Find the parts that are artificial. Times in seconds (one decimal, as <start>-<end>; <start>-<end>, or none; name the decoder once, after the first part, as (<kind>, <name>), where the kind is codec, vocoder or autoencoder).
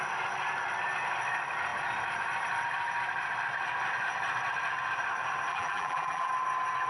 5.5-6.3 (vocoder, BigVGAN v2)